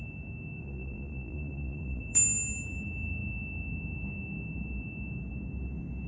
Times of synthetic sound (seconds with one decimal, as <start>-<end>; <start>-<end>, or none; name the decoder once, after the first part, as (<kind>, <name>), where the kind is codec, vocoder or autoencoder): 0.6-2.0 (vocoder, Vocos)